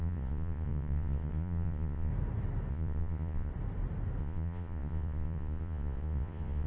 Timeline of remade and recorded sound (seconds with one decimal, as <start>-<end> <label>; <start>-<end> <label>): 0.0-2.1 remade; 2.1-2.7 recorded; 2.7-3.5 remade; 3.5-4.2 recorded; 4.2-6.7 remade